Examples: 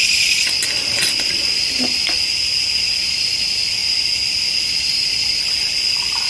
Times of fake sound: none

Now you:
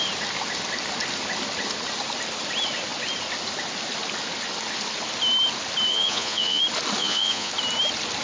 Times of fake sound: 5.9-6.6 (vocoder, Vocos); 7.0-7.5

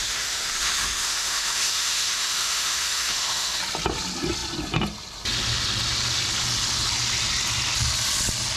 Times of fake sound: 0.0-3.6 (autoencoder, DAC-VAE)